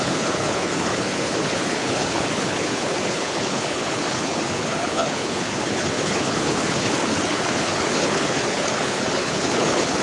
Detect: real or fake fake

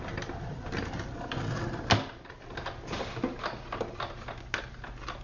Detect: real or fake real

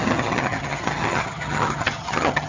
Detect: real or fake fake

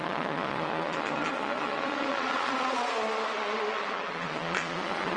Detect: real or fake fake